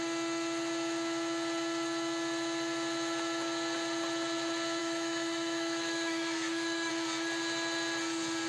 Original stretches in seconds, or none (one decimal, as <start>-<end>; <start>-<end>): 0.0-4.8; 6.9-8.5